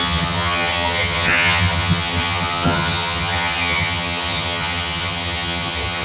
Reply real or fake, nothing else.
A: fake